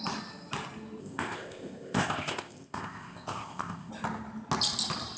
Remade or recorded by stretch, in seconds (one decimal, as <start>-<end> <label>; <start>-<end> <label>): 0.0-1.0 recorded; 1.0-3.9 remade; 3.9-5.2 recorded